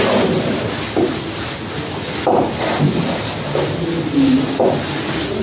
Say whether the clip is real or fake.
real